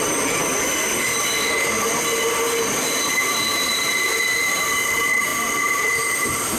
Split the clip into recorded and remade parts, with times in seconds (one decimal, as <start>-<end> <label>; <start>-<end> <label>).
0.0-0.4 remade; 0.4-3.1 recorded; 3.1-6.6 remade